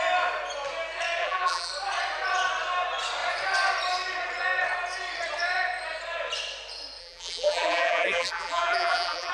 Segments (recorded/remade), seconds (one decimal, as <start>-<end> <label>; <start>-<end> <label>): 0.0-1.2 recorded; 1.2-1.7 remade; 1.7-7.0 recorded; 7.0-9.3 remade